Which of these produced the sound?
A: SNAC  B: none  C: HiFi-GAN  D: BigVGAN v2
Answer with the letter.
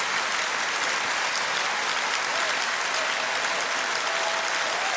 B